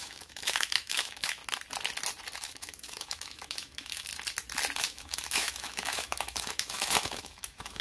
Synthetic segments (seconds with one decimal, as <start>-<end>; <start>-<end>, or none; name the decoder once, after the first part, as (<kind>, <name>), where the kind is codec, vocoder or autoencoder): 0.0-1.4 (autoencoder, DAC-VAE); 2.4-4.1; 4.8-7.8